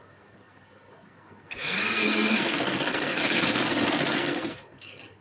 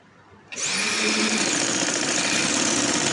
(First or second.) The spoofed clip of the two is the first